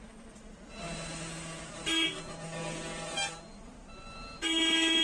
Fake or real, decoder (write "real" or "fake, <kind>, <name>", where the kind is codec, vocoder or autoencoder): real